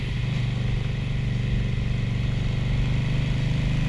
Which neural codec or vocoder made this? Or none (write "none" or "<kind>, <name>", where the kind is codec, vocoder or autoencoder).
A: none